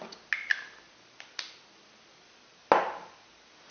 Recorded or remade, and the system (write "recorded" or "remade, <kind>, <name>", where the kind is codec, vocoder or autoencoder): recorded